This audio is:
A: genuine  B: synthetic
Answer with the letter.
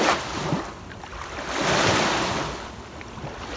B